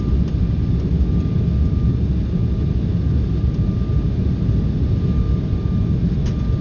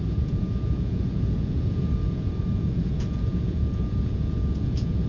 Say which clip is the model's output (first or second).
second